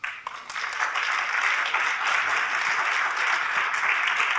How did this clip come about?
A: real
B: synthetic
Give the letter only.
A